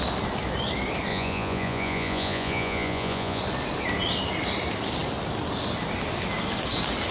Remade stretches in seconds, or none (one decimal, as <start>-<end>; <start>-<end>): 1.1-3.4